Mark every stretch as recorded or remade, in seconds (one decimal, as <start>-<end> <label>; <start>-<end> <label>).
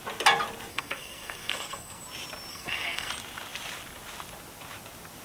0.0-0.7 recorded; 0.7-2.0 remade; 2.0-2.5 recorded; 2.5-3.1 remade; 3.1-5.2 recorded